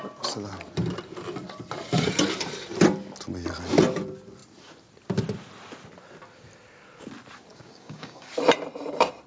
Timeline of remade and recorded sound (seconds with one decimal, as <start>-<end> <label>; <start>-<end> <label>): 0.0-7.5 recorded; 7.5-8.3 remade; 8.3-9.3 recorded